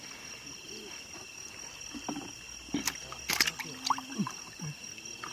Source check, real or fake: real